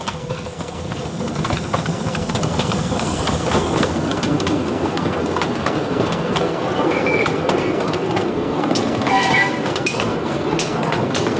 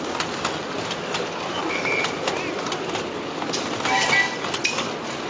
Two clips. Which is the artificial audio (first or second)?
first